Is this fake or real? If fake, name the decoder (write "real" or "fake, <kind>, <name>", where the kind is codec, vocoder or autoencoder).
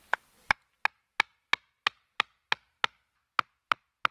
real